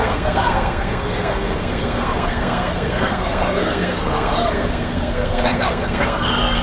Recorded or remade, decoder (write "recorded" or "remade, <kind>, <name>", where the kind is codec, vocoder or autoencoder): remade, codec, SNAC